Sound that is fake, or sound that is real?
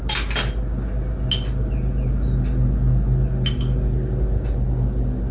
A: real